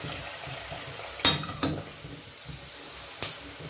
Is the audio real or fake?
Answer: real